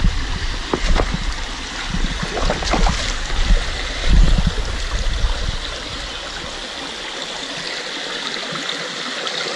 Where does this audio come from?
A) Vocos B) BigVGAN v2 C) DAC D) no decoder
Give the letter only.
D